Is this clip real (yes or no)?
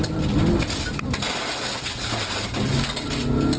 yes